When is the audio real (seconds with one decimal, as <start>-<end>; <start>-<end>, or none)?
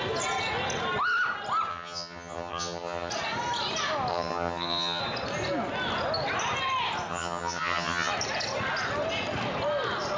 0.0-1.7; 3.1-4.1; 5.0-7.1; 8.1-10.2